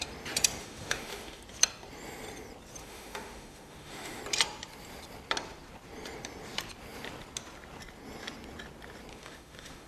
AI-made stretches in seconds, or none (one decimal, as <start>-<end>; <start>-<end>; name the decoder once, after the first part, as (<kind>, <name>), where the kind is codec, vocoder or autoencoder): 0.6-1.4 (autoencoder, DAC-VAE); 2.8-4.2; 9.1-9.9